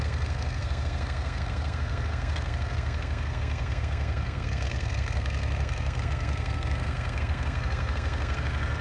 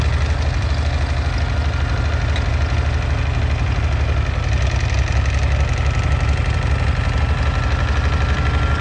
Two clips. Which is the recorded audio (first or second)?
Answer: second